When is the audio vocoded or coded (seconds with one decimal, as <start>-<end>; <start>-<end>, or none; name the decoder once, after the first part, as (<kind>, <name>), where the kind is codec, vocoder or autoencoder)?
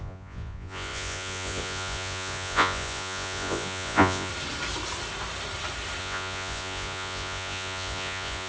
0.0-4.3 (vocoder, Vocos); 6.0-8.5